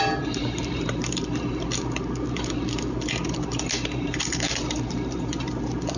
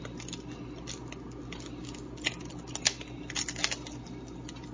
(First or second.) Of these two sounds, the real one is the second